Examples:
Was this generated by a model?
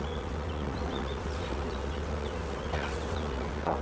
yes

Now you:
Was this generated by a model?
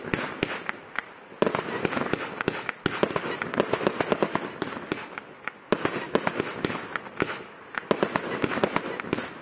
no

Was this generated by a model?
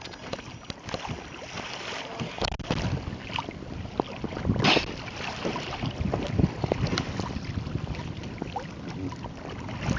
no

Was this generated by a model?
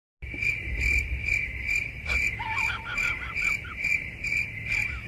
no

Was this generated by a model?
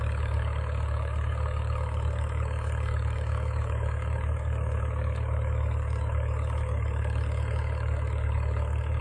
yes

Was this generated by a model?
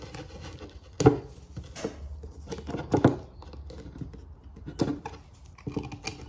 no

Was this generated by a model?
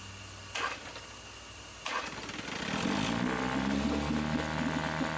no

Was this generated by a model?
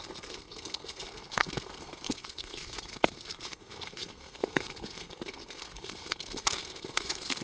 yes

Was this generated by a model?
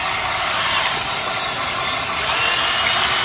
no